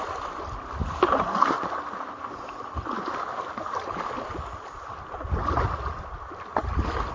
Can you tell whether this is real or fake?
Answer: real